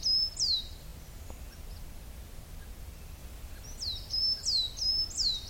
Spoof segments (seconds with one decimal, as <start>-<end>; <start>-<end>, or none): none

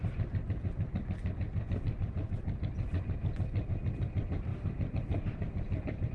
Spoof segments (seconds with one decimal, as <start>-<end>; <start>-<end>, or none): none

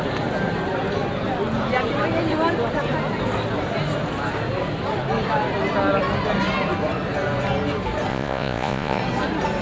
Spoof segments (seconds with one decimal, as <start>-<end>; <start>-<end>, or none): 8.1-9.0

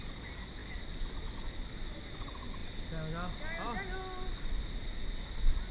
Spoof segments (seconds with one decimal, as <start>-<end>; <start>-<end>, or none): none

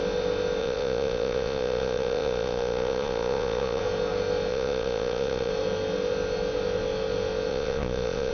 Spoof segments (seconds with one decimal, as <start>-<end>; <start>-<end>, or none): 0.6-3.8; 4.5-5.5; 7.5-8.3

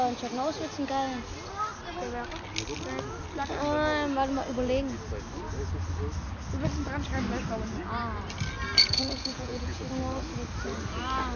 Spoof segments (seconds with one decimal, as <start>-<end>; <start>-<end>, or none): 8.8-9.8

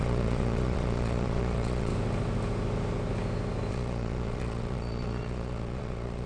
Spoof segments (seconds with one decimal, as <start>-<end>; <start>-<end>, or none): 0.0-1.9; 3.7-6.3

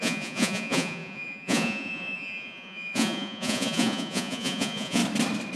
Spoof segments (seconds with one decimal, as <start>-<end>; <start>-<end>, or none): 0.0-5.0